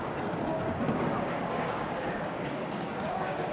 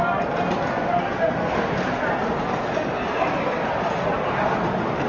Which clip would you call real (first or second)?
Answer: second